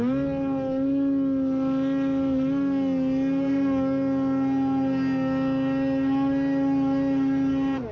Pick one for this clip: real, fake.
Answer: real